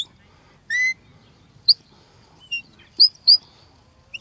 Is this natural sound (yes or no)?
no